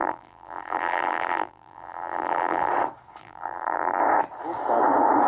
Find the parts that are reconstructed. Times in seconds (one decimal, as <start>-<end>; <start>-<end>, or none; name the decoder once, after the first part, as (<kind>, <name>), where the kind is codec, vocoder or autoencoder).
0.0-2.7 (vocoder, BigVGAN v2); 3.2-4.0